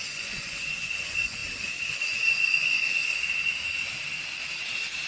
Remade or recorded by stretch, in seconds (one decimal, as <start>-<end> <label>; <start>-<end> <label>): 0.0-1.4 remade; 1.4-1.9 recorded; 1.9-3.0 remade; 3.0-5.1 recorded